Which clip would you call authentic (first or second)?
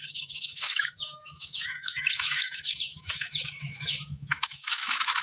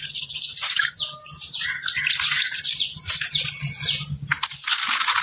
second